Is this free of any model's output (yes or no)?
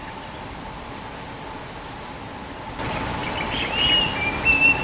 yes